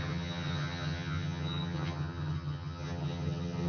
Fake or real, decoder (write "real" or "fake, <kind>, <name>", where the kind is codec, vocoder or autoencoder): fake, vocoder, HiFi-GAN